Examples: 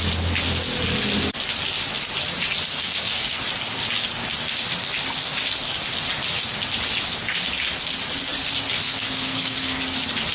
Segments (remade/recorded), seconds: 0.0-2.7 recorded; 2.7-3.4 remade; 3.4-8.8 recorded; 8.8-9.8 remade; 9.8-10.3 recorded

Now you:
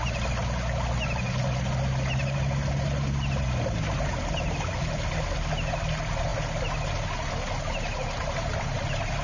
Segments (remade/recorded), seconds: 0.0-9.2 recorded

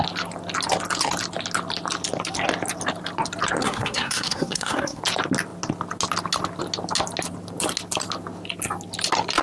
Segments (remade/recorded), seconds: 0.0-3.6 recorded; 3.6-5.0 remade; 5.0-9.4 recorded

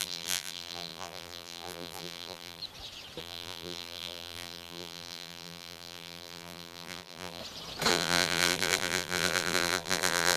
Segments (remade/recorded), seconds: 0.0-2.6 remade; 2.6-3.2 recorded; 3.2-7.4 remade; 7.4-7.9 recorded; 7.9-10.4 remade

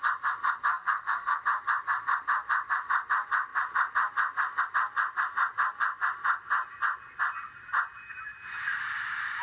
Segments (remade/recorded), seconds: 0.0-0.7 recorded; 0.7-1.4 remade; 1.4-9.4 recorded

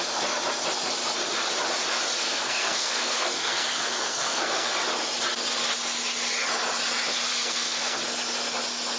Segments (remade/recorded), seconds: 0.0-2.2 recorded; 2.2-4.7 remade; 4.7-7.3 recorded; 7.3-8.0 remade; 8.0-9.0 recorded

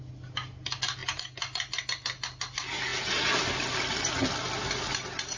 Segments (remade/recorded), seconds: 0.0-5.4 recorded